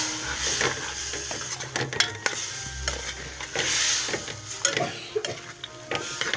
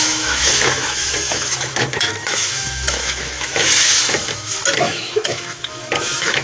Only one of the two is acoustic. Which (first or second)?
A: first